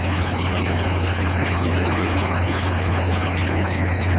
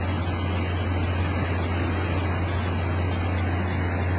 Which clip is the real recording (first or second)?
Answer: second